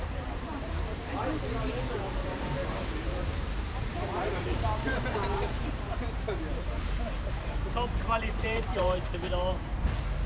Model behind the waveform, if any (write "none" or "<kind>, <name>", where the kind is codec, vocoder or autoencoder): vocoder, BigVGAN v2